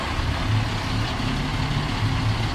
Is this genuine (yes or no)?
yes